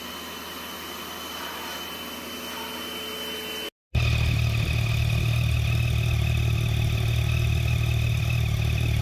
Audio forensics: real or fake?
real